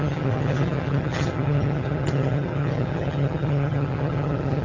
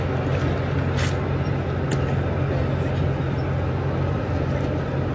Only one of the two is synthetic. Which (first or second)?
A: first